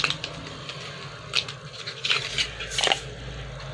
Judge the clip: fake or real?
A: real